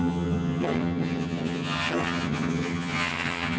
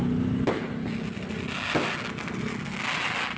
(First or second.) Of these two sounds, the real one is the second